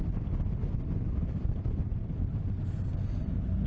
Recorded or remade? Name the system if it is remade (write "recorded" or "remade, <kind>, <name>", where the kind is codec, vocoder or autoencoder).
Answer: recorded